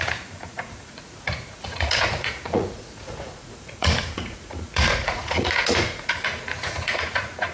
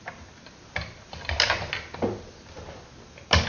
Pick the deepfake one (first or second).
first